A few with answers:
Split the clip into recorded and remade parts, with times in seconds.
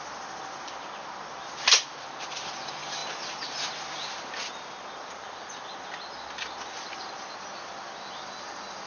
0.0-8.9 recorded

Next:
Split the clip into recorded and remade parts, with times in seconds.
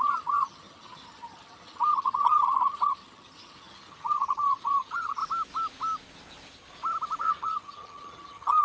0.0-5.2 remade; 5.2-7.2 recorded; 7.2-8.6 remade